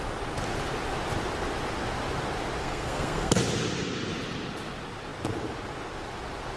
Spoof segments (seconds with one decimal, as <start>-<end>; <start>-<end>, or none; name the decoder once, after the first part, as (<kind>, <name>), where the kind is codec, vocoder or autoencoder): 2.6-3.3 (codec, SNAC)